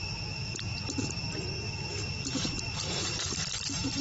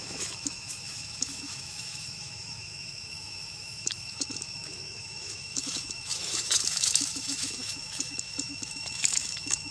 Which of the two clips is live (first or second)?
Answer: first